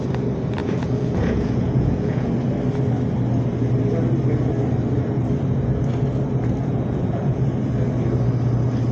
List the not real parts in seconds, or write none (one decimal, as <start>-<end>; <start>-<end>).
0.6-2.3; 6.6-7.4